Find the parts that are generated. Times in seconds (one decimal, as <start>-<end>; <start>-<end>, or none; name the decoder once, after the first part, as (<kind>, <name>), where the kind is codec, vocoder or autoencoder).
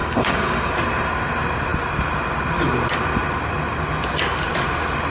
0.0-0.7 (codec, DAC)